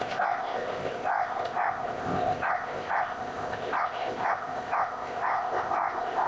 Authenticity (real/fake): fake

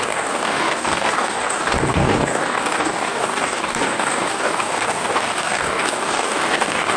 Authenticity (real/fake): fake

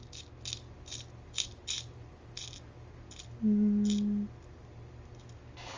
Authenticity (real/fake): real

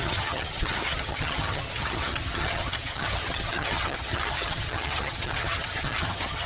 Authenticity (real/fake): fake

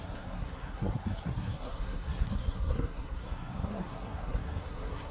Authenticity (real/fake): fake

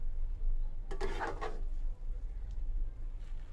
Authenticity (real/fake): real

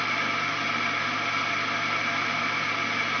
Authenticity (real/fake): real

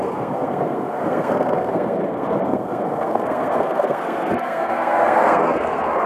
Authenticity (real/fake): fake